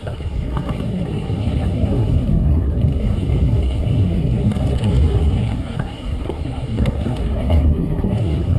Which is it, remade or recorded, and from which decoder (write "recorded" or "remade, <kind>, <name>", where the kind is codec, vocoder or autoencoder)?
remade, codec, SNAC